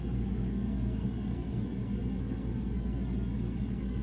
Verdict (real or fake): fake